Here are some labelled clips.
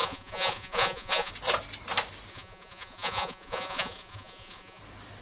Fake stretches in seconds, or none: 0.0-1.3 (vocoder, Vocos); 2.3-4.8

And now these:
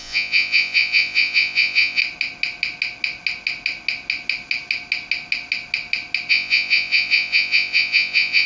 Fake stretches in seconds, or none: 0.0-2.0 (vocoder, Vocos); 6.3-8.5

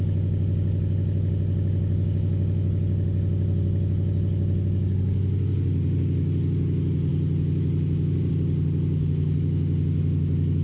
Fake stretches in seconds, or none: none

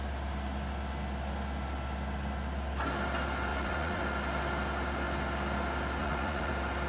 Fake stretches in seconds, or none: 3.5-4.0 (vocoder, Vocos); 6.0-6.5

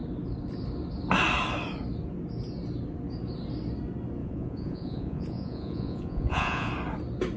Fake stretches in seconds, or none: 4.2-6.7 (vocoder, Vocos)